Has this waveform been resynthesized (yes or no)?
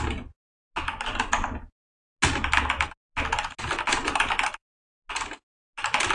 no